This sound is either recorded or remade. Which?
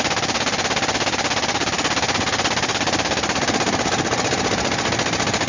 recorded